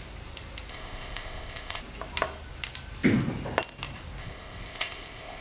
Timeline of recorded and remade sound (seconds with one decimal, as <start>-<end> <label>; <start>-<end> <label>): 0.0-0.7 recorded; 0.7-1.8 remade; 1.8-4.2 recorded; 4.2-5.4 remade